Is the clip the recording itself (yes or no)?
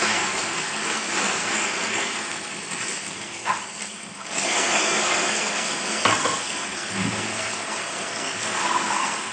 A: no